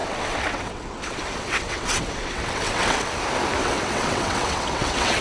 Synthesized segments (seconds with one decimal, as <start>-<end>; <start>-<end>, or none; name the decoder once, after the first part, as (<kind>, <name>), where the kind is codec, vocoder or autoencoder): 0.0-3.1 (vocoder, WaveNeXt); 3.6-5.2